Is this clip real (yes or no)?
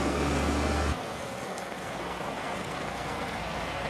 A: no